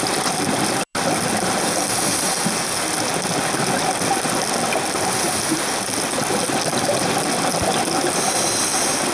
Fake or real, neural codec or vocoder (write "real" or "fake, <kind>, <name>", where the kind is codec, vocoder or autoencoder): real